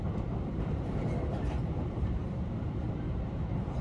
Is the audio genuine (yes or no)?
no